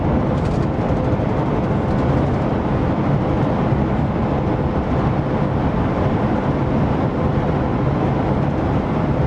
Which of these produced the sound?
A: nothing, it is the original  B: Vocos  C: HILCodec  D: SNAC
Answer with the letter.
A